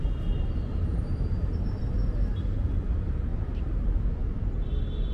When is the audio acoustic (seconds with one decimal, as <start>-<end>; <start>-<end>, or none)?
0.0-0.7; 1.8-5.1